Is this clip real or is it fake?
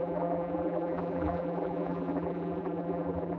fake